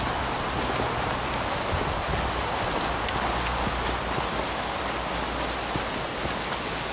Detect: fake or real real